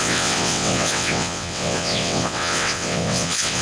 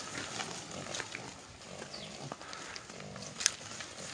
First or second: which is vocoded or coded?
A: first